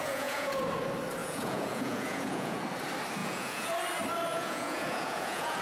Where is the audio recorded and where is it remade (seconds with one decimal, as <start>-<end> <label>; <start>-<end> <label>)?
0.0-0.6 remade; 0.6-1.2 recorded; 1.2-2.6 remade; 2.6-3.2 recorded; 3.2-3.7 remade; 3.7-4.3 recorded; 4.3-5.6 remade